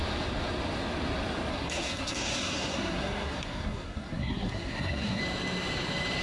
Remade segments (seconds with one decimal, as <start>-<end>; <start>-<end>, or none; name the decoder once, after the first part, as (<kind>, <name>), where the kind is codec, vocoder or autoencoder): 1.5-5.2 (codec, SNAC)

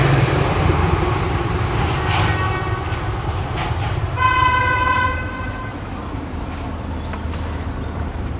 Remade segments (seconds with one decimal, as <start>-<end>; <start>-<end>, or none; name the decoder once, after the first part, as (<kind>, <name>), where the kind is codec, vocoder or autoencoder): 0.0-2.3 (vocoder, BigVGAN v2); 3.7-4.6; 5.3-5.7; 7.9-8.4